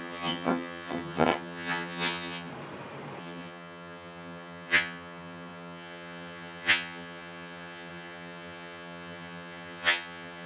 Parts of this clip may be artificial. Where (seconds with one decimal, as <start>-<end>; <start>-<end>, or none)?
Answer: 0.0-2.5; 3.2-10.5